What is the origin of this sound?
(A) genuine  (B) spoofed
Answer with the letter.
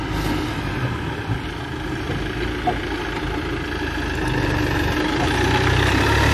A